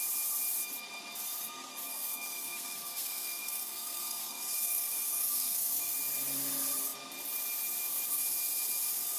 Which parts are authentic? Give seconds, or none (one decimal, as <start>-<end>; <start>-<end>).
0.0-1.4; 5.9-9.2